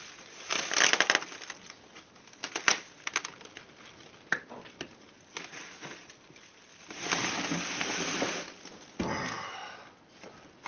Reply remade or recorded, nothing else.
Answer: recorded